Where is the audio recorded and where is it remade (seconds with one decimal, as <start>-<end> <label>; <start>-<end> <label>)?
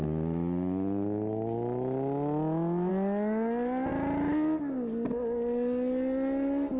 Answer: 0.0-6.8 recorded